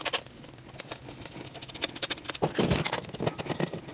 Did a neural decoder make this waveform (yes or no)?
no